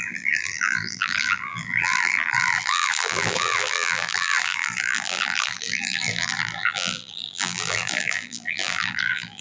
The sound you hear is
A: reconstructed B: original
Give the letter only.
A